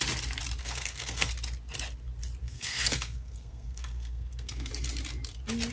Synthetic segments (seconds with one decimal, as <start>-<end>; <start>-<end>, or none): 0.6-1.3; 2.4-4.7